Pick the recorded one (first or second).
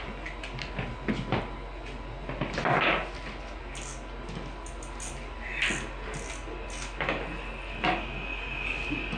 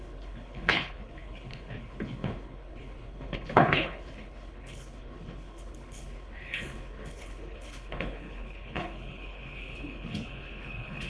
first